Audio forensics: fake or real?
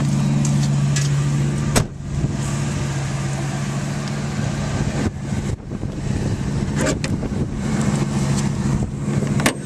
real